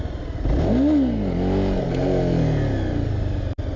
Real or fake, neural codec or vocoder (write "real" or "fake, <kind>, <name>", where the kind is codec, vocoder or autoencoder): real